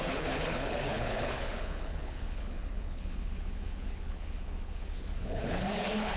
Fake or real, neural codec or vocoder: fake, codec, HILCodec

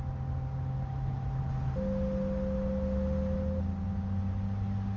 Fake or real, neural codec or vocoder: real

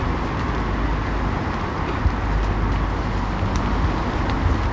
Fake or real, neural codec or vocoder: real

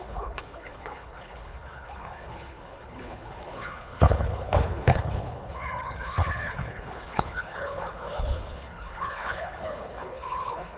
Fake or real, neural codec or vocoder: fake, codec, HILCodec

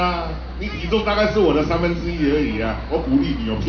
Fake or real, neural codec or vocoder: real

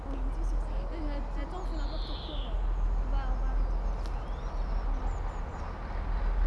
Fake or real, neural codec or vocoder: real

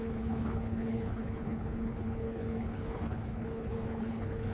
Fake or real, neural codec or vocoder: fake, codec, HILCodec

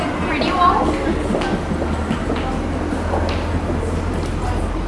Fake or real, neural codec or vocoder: real